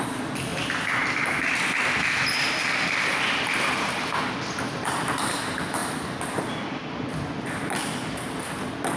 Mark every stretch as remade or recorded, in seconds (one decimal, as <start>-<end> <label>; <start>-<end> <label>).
0.0-9.0 recorded